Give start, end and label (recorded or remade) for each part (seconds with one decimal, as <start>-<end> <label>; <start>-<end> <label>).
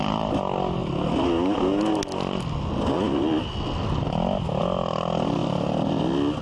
0.0-6.4 recorded